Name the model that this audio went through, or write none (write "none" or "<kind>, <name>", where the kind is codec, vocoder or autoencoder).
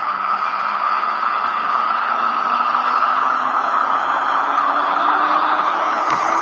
codec, HILCodec